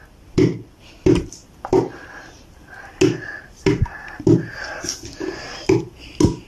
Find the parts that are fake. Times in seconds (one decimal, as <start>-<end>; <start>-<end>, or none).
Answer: none